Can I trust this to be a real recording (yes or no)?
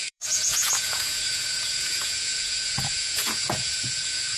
no